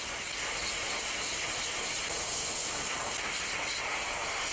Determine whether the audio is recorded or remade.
recorded